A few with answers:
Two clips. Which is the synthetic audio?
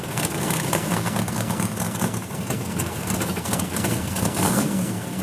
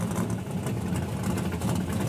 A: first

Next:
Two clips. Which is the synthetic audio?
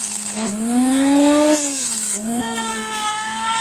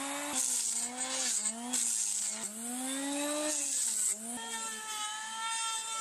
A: first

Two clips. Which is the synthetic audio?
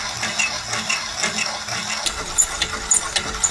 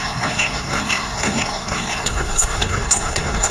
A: second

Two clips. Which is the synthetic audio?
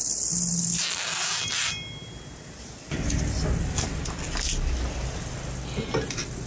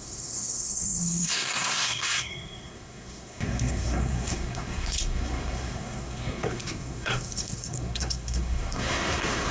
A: second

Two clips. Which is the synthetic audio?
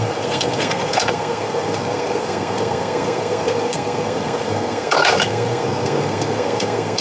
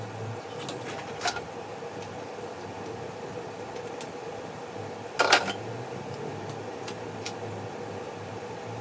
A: first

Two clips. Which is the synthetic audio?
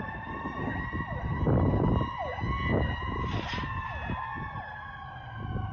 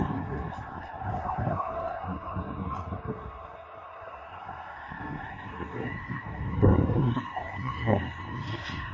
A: second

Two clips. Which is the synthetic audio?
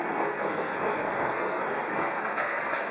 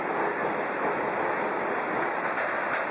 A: first